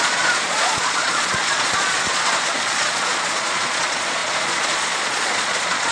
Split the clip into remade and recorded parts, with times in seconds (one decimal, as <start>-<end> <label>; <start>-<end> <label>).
0.0-5.9 remade